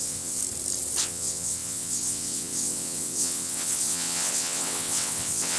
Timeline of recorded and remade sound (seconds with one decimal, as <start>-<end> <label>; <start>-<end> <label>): 0.0-0.4 remade; 0.4-1.0 recorded; 1.0-5.6 remade